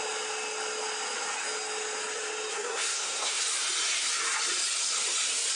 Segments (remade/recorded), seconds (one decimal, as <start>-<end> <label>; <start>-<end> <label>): 0.0-2.5 recorded; 2.5-3.4 remade; 3.4-5.6 recorded